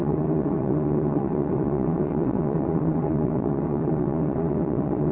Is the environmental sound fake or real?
fake